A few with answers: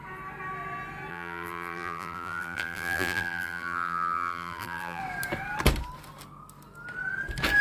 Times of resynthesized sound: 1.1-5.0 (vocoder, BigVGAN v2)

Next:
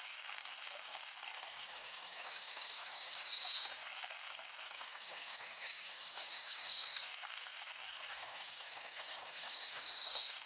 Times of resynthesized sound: 0.0-10.5 (codec, DAC)

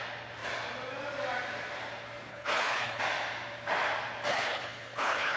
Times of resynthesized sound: 2.3-3.0 (codec, HILCodec); 4.3-5.4

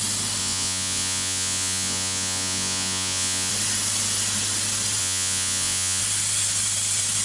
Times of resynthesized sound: 0.4-3.5 (vocoder, Vocos); 5.0-6.0

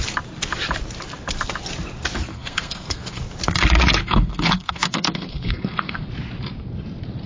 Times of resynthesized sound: 2.3-3.2 (codec, SNAC); 4.0-6.1

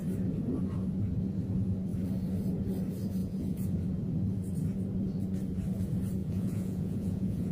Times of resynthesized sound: 3.2-3.8 (vocoder, Vocos); 6.2-7.5

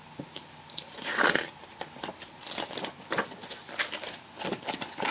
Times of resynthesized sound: none

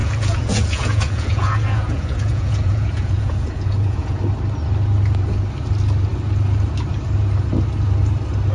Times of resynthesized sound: 0.0-4.2 (vocoder, Vocos)